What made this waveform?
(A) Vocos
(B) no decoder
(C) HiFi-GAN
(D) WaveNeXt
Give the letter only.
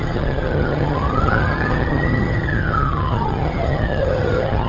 C